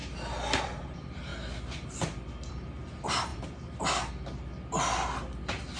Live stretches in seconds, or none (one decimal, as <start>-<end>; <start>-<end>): 0.0-0.6; 1.3-2.5; 3.3-5.8